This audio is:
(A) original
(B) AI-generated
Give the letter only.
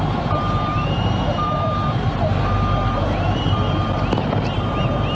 B